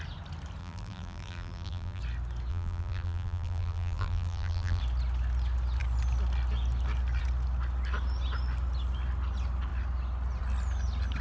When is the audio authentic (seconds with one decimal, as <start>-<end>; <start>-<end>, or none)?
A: 0.0-0.6; 2.0-2.5; 4.8-11.2